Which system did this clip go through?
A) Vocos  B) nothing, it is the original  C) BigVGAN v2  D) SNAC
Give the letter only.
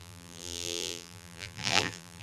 C